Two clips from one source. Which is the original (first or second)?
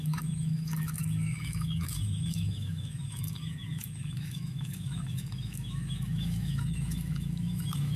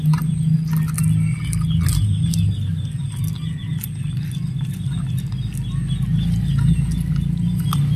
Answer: second